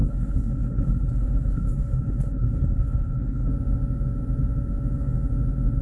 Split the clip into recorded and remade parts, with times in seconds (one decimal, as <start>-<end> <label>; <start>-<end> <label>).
0.0-3.5 remade; 3.5-5.8 recorded